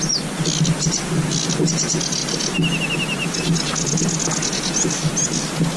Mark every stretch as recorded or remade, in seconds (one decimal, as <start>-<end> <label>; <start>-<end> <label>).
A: 0.0-5.8 recorded